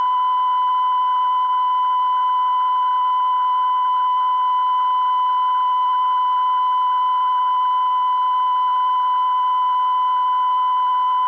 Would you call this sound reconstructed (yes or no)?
no